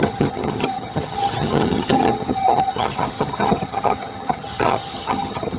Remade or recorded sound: remade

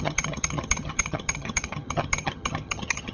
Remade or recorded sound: remade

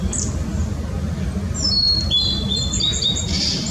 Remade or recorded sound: recorded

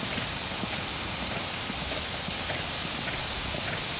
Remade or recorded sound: recorded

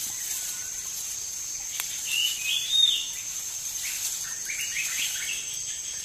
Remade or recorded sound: recorded